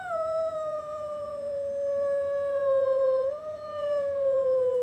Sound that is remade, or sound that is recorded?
remade